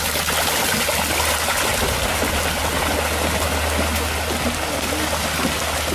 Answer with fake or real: real